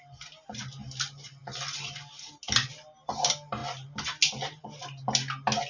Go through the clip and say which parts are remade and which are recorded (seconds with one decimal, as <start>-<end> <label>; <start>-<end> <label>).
0.0-5.7 recorded